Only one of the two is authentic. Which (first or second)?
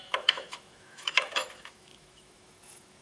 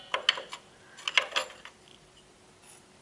second